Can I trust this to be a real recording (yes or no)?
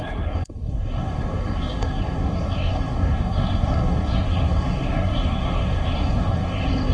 no